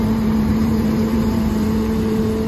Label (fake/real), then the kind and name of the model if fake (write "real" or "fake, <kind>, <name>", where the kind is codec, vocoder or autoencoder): fake, vocoder, BigVGAN v2